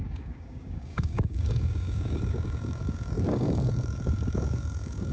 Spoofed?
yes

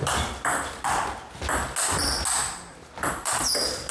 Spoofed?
no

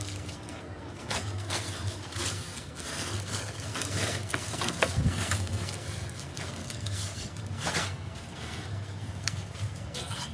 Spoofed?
yes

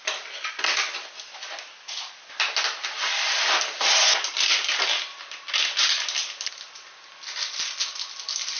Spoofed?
no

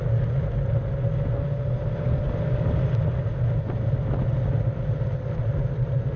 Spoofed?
no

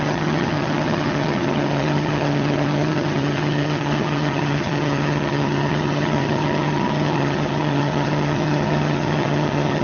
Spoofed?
yes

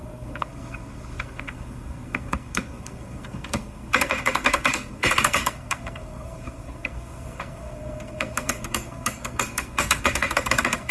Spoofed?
yes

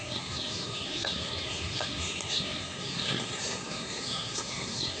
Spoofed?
yes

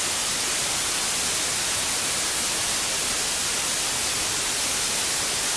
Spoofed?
no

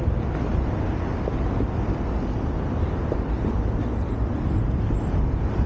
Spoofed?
no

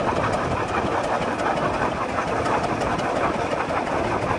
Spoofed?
no